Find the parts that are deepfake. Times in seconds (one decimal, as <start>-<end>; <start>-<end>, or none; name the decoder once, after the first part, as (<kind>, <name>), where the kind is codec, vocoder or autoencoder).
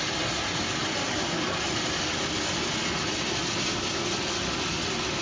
none